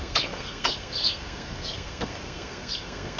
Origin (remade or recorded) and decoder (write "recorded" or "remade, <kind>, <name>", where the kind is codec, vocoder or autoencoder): remade, codec, SNAC